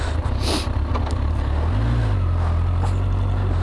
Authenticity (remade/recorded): recorded